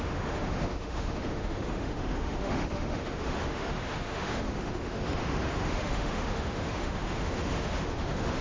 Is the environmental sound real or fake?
fake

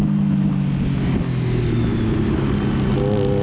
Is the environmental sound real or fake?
real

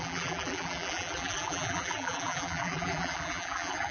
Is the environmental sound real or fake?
fake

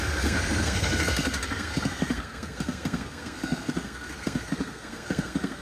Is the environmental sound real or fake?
fake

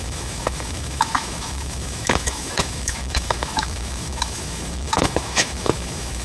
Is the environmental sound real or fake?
fake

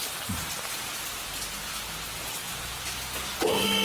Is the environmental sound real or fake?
real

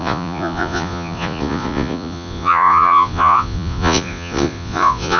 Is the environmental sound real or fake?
fake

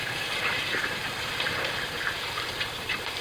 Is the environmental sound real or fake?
fake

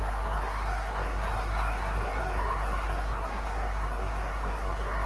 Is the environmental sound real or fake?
fake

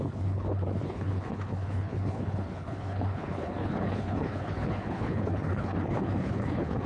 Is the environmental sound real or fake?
fake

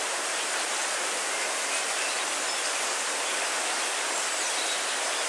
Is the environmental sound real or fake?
real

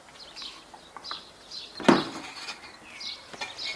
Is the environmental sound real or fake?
real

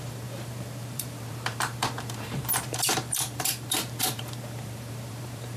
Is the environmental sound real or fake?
fake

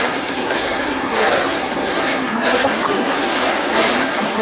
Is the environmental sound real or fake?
fake